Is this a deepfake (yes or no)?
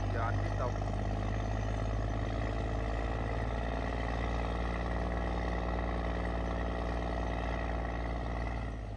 no